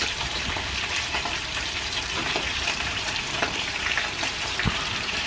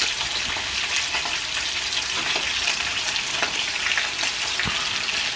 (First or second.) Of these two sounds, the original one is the second